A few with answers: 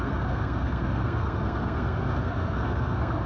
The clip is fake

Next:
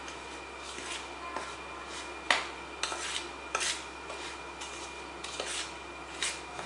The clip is real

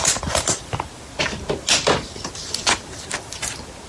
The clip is real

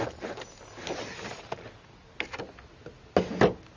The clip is real